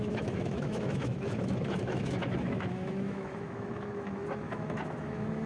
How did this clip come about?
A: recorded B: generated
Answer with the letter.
B